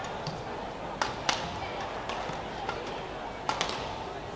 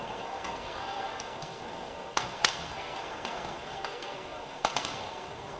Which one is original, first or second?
first